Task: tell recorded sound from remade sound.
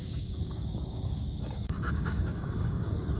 remade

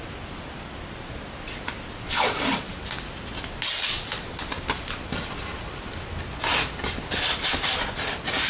recorded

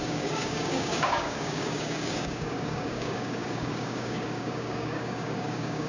remade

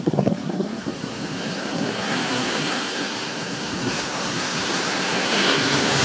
remade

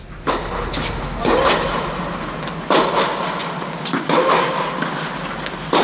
recorded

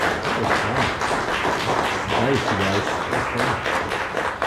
recorded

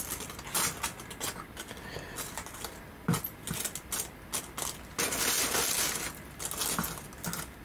recorded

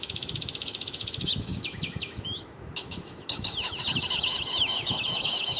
remade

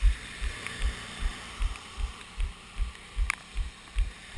remade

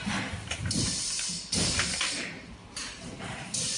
remade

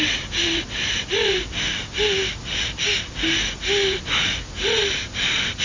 recorded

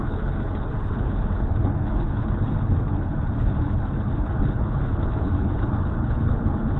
remade